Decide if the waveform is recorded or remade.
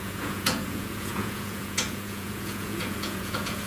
remade